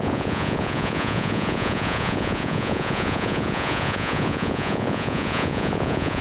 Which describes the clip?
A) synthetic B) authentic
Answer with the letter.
A